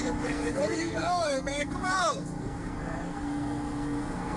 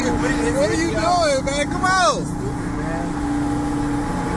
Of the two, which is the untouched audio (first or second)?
second